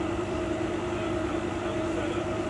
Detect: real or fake fake